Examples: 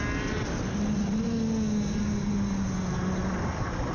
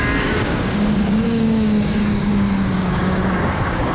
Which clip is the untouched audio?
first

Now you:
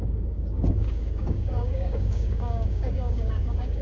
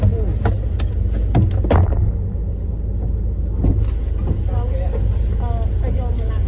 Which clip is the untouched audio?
second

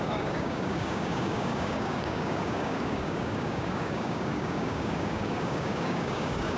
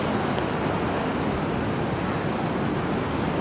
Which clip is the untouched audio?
second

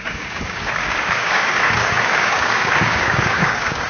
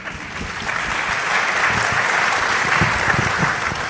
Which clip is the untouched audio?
second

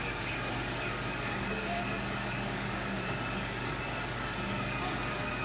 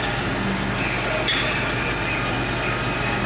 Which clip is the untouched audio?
second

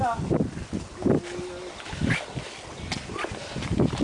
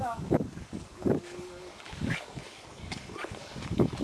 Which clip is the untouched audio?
first